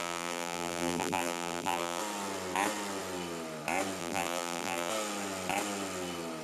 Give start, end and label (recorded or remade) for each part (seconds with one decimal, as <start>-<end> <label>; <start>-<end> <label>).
0.0-2.0 remade; 2.0-4.0 recorded; 4.0-4.9 remade; 4.9-6.4 recorded